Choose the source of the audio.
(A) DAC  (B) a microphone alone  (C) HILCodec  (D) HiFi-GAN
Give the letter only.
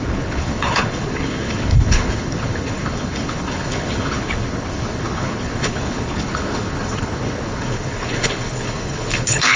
C